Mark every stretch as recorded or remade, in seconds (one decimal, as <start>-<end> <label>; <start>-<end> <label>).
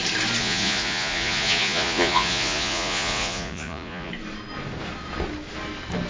0.0-0.4 recorded; 0.4-4.1 remade; 4.1-6.1 recorded